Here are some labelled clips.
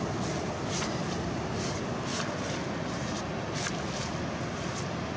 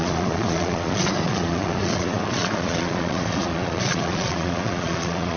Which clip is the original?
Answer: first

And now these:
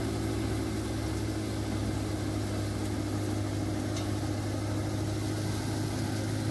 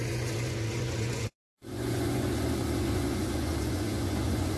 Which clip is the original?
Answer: first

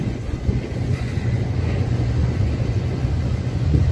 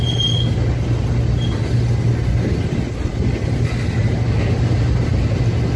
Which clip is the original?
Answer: second